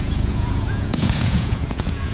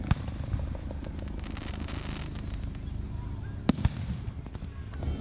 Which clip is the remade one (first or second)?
first